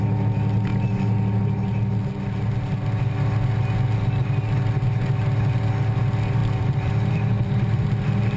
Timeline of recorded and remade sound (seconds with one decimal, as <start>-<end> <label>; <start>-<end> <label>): 0.0-6.4 recorded; 6.4-8.4 remade